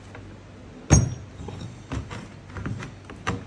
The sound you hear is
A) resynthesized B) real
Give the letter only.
B